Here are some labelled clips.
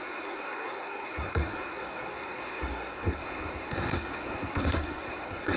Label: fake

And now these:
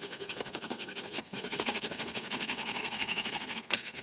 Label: fake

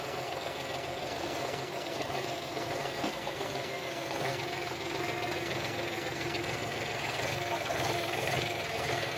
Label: fake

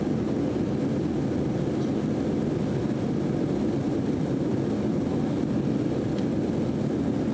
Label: real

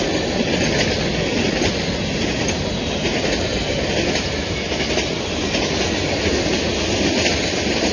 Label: real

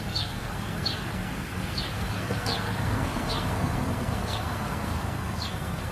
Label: fake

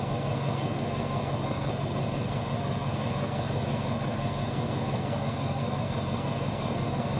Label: fake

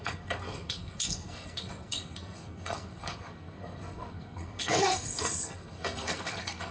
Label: fake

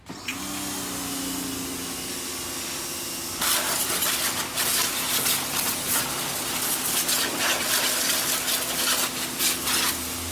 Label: real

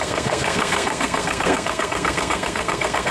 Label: fake